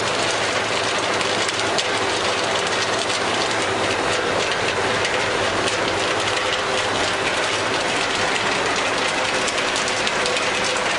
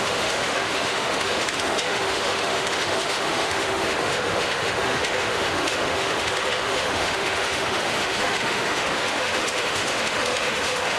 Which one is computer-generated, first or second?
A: second